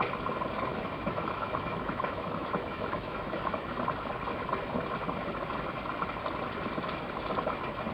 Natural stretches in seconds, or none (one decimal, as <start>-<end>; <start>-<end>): 0.0-0.7; 3.8-7.9